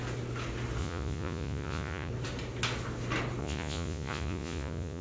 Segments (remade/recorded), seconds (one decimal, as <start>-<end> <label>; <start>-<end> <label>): 0.0-0.8 recorded; 0.8-2.1 remade; 2.1-3.4 recorded; 3.4-5.0 remade